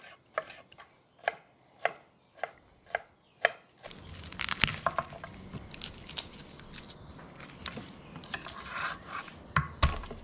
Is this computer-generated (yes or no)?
no